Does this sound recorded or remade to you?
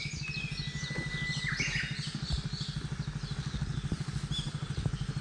recorded